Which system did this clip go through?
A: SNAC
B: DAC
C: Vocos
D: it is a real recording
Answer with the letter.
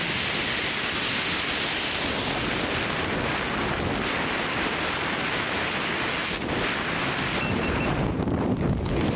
D